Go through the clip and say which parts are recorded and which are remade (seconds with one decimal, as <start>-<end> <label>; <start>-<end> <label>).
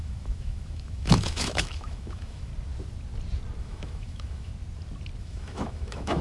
0.0-2.5 remade; 2.5-3.6 recorded; 3.6-4.5 remade; 4.5-5.2 recorded; 5.2-6.2 remade